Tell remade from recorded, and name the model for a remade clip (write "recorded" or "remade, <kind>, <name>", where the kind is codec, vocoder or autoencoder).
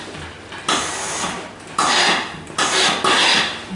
recorded